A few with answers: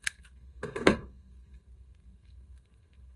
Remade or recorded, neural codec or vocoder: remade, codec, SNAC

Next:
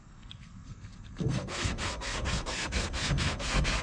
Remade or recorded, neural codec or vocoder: remade, codec, SNAC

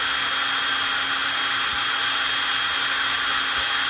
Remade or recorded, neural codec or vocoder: recorded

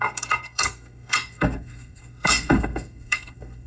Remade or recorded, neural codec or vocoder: remade, codec, SNAC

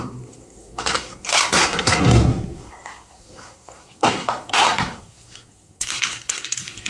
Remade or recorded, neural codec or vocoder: remade, codec, SNAC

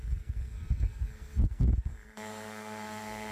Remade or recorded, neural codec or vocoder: remade, codec, SNAC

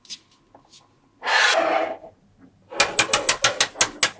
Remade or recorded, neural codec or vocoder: recorded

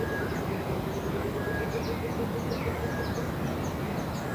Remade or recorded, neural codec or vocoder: recorded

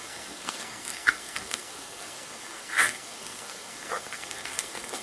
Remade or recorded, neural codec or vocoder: remade, codec, SNAC